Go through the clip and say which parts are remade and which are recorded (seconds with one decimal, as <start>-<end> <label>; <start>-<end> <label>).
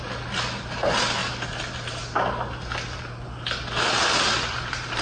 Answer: 0.0-5.0 recorded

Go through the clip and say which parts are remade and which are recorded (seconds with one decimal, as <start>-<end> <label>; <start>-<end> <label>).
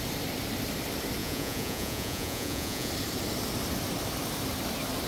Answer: 0.0-1.2 recorded; 1.2-2.9 remade; 2.9-5.1 recorded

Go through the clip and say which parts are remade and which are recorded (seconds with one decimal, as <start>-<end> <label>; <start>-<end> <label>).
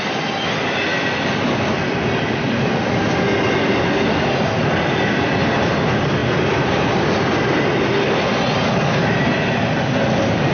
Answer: 0.0-10.5 recorded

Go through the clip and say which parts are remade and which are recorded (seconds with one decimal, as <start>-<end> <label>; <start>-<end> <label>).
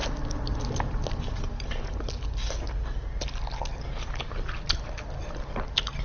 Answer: 0.0-6.0 recorded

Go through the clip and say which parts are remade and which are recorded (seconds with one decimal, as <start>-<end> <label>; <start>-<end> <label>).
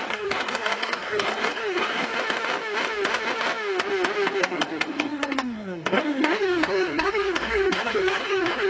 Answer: 0.0-2.1 remade; 2.1-4.4 recorded; 4.4-8.7 remade